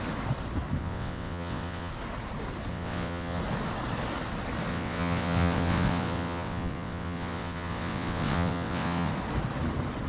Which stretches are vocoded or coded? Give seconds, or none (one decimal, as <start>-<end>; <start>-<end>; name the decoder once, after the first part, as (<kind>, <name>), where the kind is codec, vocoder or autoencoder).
0.8-1.9 (vocoder, WaveNeXt); 2.7-3.4; 4.7-9.1